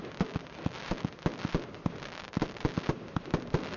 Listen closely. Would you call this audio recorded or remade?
recorded